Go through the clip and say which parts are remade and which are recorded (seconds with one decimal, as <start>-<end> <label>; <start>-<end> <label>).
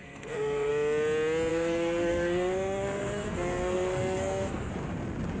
0.0-0.7 remade; 0.7-1.5 recorded; 1.5-4.7 remade; 4.7-5.4 recorded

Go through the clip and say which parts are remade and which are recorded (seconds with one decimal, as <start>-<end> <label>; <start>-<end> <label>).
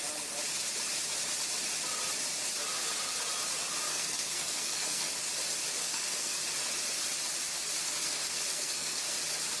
0.0-3.9 recorded; 3.9-5.1 remade; 5.1-5.8 recorded; 5.8-6.4 remade; 6.4-7.8 recorded; 7.8-9.2 remade; 9.2-9.6 recorded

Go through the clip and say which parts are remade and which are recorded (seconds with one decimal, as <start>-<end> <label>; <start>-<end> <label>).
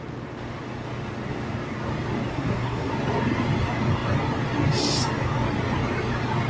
0.0-2.3 recorded; 2.3-2.9 remade; 2.9-6.5 recorded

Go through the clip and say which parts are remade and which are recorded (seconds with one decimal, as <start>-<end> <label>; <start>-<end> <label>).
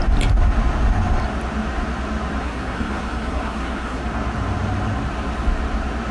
0.0-2.4 recorded; 2.4-4.0 remade; 4.0-6.1 recorded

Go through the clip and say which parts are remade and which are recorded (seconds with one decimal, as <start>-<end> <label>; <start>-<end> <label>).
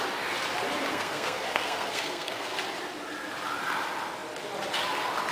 0.0-0.9 recorded; 0.9-2.6 remade; 2.6-5.3 recorded